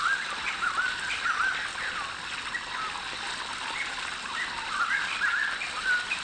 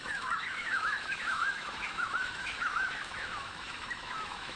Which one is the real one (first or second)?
first